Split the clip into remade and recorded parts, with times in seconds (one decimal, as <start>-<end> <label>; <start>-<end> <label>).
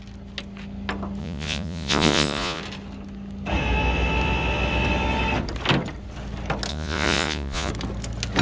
0.0-1.2 recorded; 1.2-2.6 remade; 2.6-6.7 recorded; 6.7-7.7 remade; 7.7-8.4 recorded